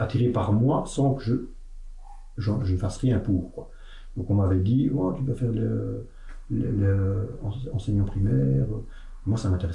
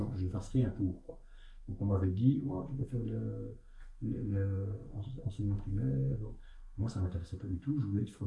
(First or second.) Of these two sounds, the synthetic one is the second